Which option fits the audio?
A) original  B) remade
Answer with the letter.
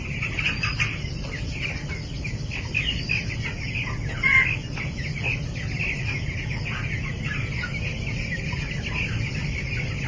A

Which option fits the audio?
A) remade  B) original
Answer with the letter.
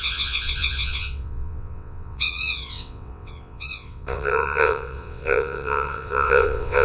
A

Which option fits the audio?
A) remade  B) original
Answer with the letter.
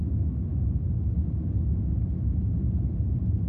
B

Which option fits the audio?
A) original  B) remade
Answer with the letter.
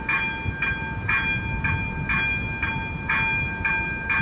A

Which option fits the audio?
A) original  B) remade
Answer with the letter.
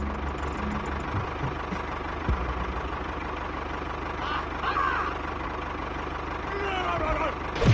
A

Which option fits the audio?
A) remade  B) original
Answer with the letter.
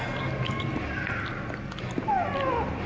B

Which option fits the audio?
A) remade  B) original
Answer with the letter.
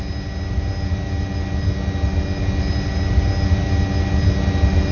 B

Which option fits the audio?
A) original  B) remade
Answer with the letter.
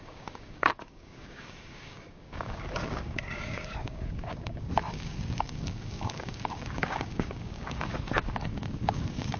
B